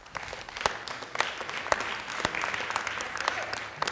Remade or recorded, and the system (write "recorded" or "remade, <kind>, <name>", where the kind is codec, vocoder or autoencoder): recorded